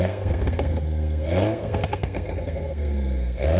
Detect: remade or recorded remade